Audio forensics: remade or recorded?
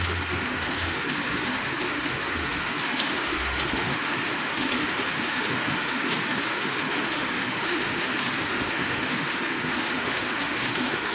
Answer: remade